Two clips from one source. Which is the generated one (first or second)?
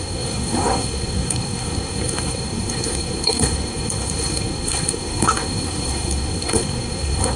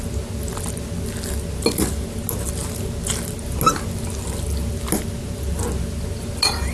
first